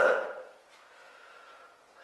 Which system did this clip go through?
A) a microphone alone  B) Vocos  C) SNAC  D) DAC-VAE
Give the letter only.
B